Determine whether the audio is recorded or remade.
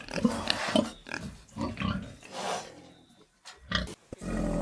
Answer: recorded